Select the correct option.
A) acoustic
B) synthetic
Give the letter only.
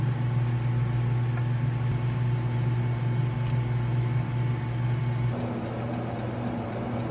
A